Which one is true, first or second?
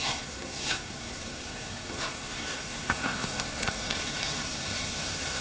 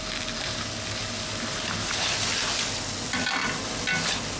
second